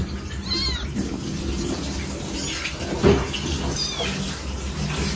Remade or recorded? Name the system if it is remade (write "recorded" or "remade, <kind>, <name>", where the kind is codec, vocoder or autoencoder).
recorded